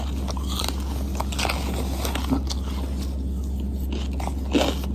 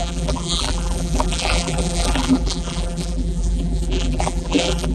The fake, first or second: second